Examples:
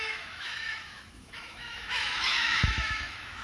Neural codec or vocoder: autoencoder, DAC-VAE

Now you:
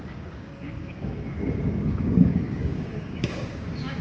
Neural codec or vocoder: codec, DAC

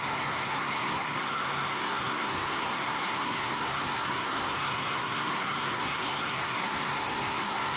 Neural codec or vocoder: codec, SNAC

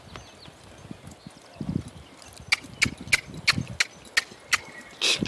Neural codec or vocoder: none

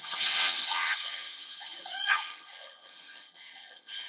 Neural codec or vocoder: vocoder, HiFi-GAN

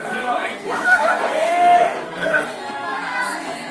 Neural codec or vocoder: codec, SNAC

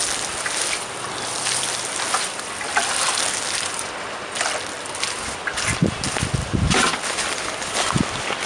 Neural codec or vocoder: none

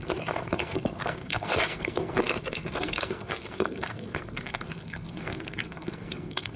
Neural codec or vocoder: codec, SNAC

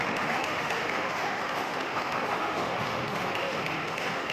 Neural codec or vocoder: autoencoder, DAC-VAE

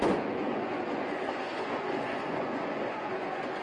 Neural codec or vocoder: vocoder, Vocos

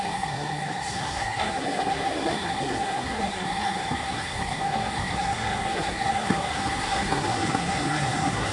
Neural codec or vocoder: codec, SNAC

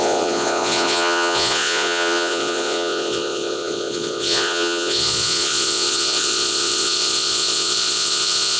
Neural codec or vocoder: vocoder, Vocos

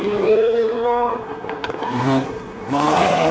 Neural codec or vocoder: codec, SNAC